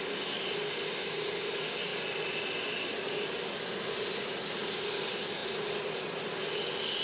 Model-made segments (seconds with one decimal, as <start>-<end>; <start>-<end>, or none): none